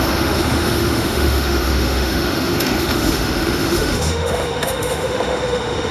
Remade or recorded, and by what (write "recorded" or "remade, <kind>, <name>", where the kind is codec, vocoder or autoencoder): remade, autoencoder, DAC-VAE